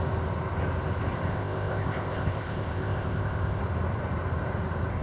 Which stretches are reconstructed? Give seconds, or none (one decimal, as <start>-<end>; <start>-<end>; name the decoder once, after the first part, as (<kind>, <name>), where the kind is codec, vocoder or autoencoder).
1.3-3.6 (codec, ZipCodec)